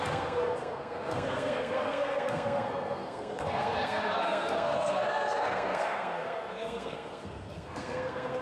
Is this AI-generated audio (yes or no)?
yes